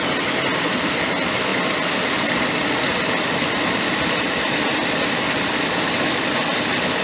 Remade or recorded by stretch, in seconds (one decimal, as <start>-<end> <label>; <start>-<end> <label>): 0.0-7.0 recorded